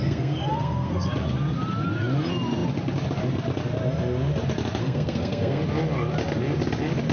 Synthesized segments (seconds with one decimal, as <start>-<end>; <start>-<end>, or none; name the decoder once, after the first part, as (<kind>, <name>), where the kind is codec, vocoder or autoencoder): 0.0-1.1 (codec, SNAC); 4.8-5.6